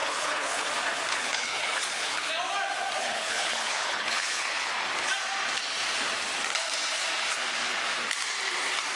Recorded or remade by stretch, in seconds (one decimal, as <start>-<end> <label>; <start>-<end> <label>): 0.0-0.7 remade; 0.7-1.1 recorded; 1.1-2.3 remade; 2.3-3.0 recorded; 3.0-4.7 remade; 4.7-9.0 recorded